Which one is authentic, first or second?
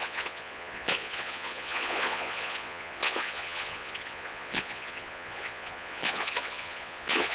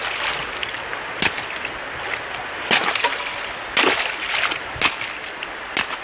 second